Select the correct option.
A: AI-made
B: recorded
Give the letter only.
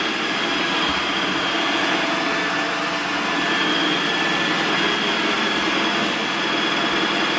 B